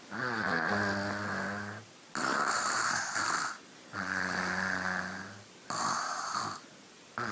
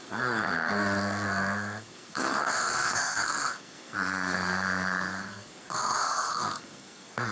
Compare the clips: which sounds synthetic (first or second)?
second